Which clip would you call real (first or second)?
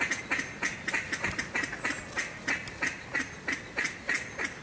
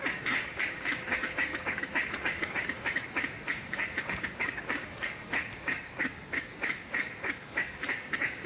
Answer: first